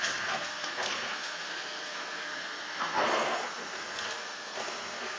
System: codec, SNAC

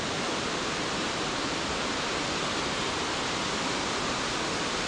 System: none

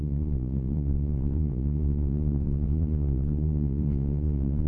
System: vocoder, Vocos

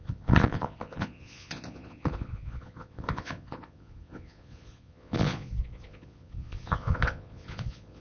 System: vocoder, Vocos